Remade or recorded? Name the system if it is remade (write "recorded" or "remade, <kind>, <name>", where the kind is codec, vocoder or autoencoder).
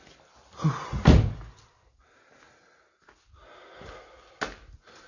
recorded